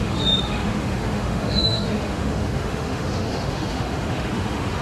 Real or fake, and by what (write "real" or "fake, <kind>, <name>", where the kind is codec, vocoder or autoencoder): fake, autoencoder, DAC-VAE